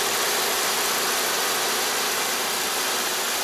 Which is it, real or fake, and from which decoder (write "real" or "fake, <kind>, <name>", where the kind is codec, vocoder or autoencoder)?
real